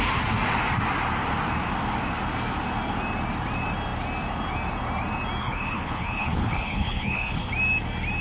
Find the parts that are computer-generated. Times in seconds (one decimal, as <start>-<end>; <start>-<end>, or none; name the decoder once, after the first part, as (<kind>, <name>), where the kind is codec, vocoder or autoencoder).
5.4-7.5 (codec, HILCodec)